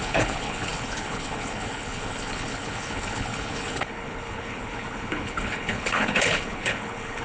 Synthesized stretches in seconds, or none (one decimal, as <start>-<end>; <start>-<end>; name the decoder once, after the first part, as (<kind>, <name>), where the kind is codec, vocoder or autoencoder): 0.0-7.2 (codec, HILCodec)